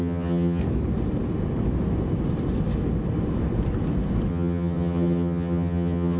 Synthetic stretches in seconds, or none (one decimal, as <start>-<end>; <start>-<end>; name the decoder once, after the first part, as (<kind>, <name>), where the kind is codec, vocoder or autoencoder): 0.0-0.6 (vocoder, HiFi-GAN); 4.3-6.2